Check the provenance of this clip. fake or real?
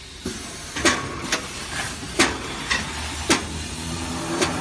fake